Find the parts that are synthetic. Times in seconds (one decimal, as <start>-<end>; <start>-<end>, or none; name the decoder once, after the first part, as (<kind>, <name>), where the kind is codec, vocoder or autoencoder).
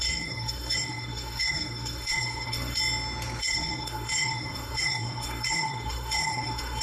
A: 0.0-2.8 (codec, SNAC); 3.4-6.8